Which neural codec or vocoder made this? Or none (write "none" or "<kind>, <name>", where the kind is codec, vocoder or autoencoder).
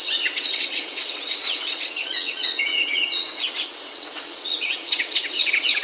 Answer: vocoder, WaveNeXt